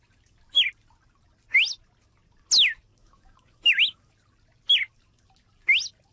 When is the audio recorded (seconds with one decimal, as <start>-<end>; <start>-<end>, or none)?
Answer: 0.0-2.9; 4.1-6.1

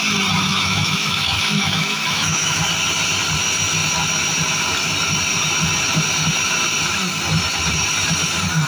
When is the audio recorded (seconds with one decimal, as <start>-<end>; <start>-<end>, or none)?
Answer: 0.0-0.5; 2.6-8.7

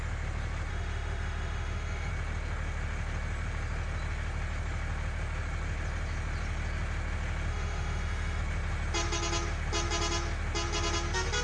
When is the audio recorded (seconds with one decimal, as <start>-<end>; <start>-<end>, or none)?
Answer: 0.0-0.7; 2.1-7.5; 8.4-11.4

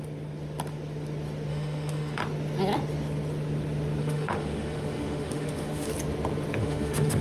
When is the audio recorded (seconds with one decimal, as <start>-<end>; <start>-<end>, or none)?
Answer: 0.0-1.5; 2.2-4.0; 5.9-6.6

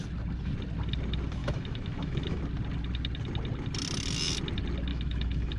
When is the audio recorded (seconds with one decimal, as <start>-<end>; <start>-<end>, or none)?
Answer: 0.0-1.4; 2.4-4.9

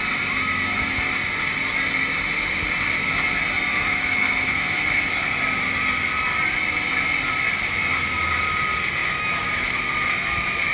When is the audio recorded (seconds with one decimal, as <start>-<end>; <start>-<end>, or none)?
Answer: 0.0-3.7; 5.1-9.0; 10.1-10.7